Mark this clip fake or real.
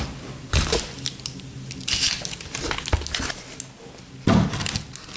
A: real